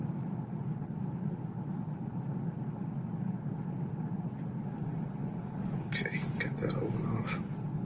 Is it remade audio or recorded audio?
remade